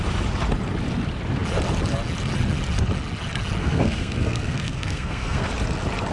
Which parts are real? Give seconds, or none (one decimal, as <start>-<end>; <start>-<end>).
0.0-3.6; 5.5-6.1